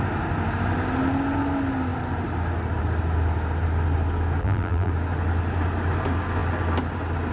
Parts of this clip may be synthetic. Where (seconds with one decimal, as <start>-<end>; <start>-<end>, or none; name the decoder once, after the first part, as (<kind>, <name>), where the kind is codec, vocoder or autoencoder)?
4.4-4.9 (vocoder, BigVGAN v2)